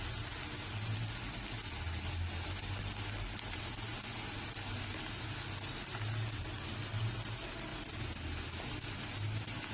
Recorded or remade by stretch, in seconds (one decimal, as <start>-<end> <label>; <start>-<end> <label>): 0.0-9.7 recorded